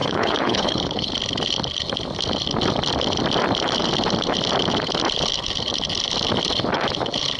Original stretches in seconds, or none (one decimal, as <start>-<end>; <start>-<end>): 1.1-7.4